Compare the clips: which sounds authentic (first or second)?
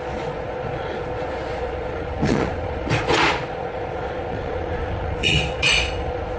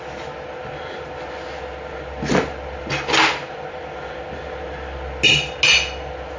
second